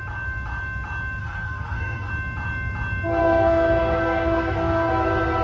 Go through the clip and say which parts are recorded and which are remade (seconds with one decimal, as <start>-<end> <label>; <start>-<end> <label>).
0.0-1.2 recorded; 1.2-2.1 remade; 2.1-3.2 recorded; 3.2-4.9 remade; 4.9-5.4 recorded